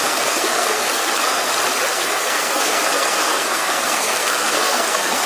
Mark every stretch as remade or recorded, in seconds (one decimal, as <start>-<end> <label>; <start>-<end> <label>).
0.0-1.5 remade; 1.5-1.9 recorded; 1.9-5.3 remade